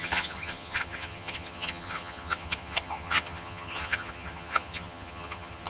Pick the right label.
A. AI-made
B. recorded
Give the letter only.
A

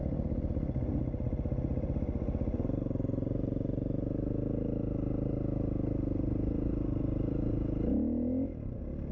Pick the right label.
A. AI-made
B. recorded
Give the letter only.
B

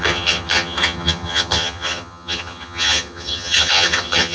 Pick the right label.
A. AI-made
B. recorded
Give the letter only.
A